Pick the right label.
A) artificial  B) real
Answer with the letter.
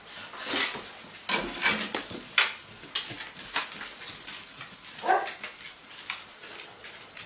B